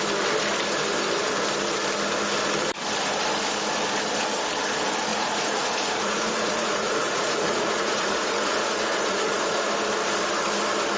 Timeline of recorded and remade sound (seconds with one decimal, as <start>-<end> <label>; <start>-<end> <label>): 0.0-5.1 recorded; 5.1-9.7 remade; 9.7-11.0 recorded

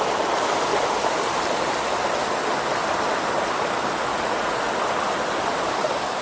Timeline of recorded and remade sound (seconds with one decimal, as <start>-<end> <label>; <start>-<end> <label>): 0.0-4.1 recorded; 4.1-4.7 remade; 4.7-6.2 recorded

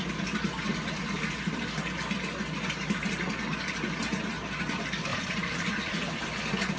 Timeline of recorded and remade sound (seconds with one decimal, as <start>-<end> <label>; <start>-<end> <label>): 0.0-5.1 recorded; 5.1-6.1 remade; 6.1-6.8 recorded